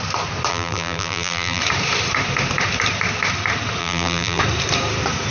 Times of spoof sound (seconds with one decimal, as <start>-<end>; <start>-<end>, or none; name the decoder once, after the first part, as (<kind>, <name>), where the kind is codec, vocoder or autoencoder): 0.5-1.6 (vocoder, BigVGAN v2); 3.8-4.4